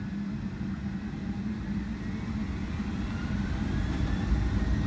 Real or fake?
real